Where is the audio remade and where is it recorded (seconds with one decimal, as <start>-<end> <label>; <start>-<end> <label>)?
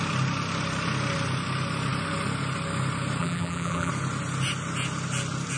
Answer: 0.0-3.2 recorded; 3.2-3.9 remade; 3.9-5.6 recorded